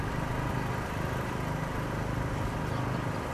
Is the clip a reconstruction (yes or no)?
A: no